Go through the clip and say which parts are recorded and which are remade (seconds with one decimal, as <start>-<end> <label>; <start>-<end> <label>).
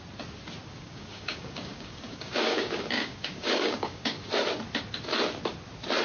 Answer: 0.0-0.7 recorded; 0.7-4.3 remade; 4.3-6.0 recorded